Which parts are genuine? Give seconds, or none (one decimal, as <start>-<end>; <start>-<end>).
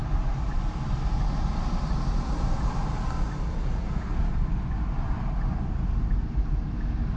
0.7-7.2